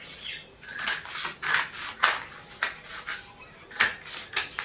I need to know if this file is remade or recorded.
recorded